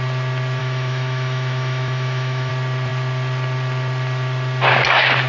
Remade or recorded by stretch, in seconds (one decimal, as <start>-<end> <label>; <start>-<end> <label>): 0.0-0.6 recorded; 0.6-2.5 remade; 2.5-5.3 recorded

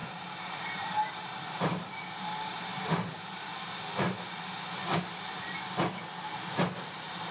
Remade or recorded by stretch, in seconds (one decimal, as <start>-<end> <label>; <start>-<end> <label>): 0.0-1.9 remade; 1.9-7.3 recorded

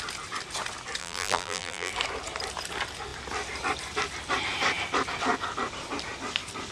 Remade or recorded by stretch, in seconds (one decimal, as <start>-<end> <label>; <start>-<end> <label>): 0.0-1.0 recorded; 1.0-1.9 remade; 1.9-6.7 recorded

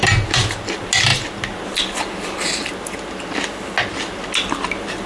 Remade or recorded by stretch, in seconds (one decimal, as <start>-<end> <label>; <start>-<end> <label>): 0.0-5.1 recorded